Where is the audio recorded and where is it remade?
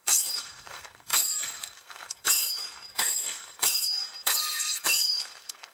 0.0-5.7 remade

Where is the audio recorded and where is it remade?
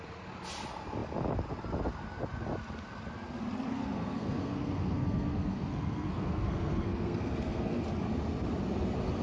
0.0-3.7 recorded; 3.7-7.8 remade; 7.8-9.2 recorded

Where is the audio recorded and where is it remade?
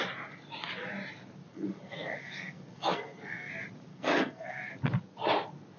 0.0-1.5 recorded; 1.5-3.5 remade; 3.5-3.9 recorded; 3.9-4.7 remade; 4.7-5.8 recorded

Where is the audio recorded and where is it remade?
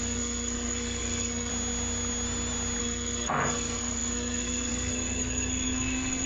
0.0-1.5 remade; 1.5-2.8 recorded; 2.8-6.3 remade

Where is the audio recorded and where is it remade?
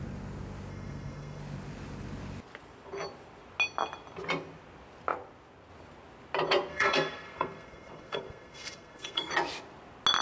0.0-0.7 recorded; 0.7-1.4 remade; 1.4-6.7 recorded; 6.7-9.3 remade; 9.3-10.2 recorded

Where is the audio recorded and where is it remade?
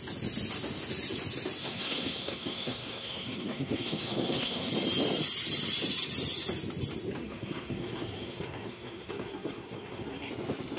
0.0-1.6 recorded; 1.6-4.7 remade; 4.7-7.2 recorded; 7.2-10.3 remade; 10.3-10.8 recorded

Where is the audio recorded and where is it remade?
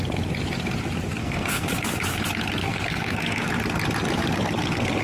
0.0-1.2 recorded; 1.2-1.7 remade; 1.7-2.6 recorded; 2.6-3.5 remade; 3.5-5.0 recorded